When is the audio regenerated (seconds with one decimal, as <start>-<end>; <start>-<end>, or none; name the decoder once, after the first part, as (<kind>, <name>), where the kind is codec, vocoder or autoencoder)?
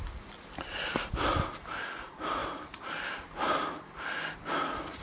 none